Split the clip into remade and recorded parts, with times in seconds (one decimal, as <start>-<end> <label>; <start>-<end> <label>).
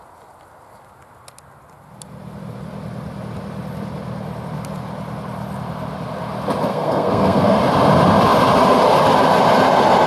0.0-6.7 recorded; 6.7-7.6 remade; 7.6-10.1 recorded